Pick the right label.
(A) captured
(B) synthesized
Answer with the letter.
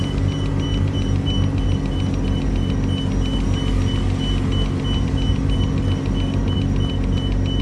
A